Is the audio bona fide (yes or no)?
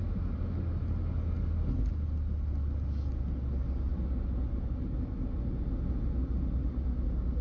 yes